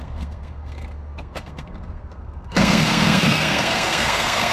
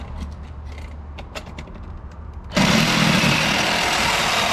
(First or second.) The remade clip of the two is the first